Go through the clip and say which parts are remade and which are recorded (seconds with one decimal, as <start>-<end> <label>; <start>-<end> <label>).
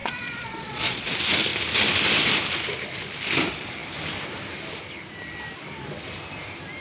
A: 0.0-1.1 remade; 1.1-6.8 recorded